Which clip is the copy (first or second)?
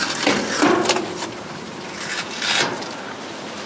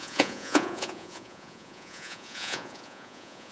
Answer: second